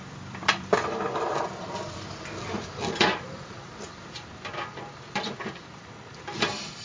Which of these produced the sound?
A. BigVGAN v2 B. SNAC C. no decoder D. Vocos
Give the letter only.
A